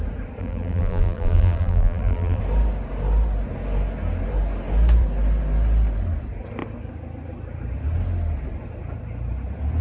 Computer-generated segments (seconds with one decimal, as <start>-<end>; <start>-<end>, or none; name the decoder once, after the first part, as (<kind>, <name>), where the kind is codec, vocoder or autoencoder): 0.4-2.4 (vocoder, BigVGAN v2)